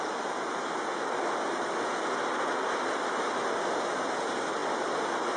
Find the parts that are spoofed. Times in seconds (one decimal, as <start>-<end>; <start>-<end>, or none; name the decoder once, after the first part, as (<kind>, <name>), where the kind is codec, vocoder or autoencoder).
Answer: none